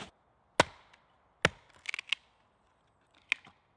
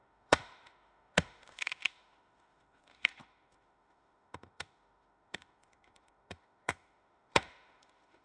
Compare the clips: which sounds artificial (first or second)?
second